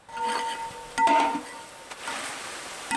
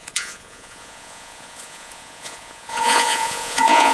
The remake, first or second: second